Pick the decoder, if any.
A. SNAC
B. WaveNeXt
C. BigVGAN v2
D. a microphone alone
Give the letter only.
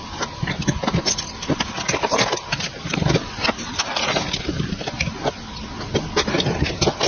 D